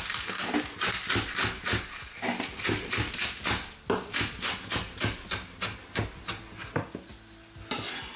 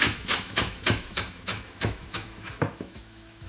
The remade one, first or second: second